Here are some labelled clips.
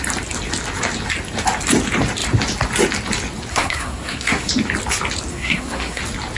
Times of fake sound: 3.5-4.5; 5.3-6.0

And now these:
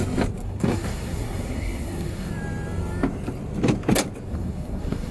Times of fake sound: 0.4-2.3; 4.3-5.1

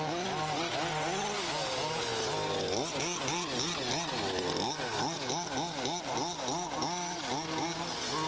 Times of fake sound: none

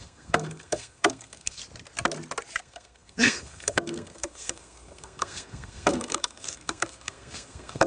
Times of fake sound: 0.0-1.6; 2.6-7.9

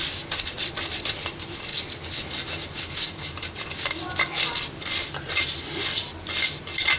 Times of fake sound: 0.0-1.7; 4.9-7.0

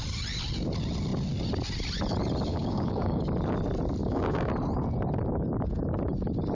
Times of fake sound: 2.5-3.2; 4.0-4.5

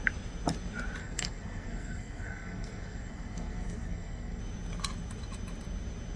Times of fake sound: 1.0-4.4